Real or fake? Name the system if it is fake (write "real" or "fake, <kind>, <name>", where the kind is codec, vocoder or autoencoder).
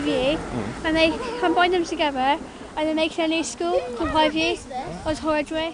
real